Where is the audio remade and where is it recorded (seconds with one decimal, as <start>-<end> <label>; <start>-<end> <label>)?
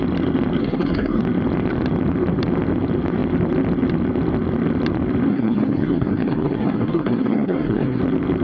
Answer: 0.0-0.6 recorded; 0.6-1.2 remade; 1.2-5.3 recorded; 5.3-8.0 remade; 8.0-8.4 recorded